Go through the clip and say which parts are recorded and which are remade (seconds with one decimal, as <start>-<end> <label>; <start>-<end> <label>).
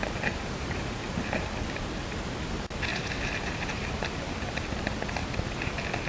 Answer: 0.0-0.8 remade; 0.8-2.9 recorded; 2.9-4.2 remade; 4.2-6.1 recorded